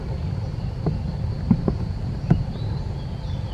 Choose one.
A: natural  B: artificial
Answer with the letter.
A